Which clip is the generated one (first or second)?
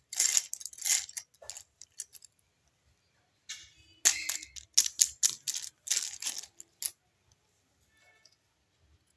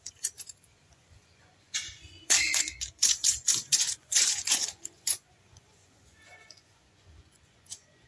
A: second